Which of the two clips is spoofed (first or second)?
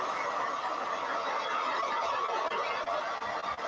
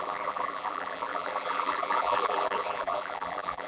second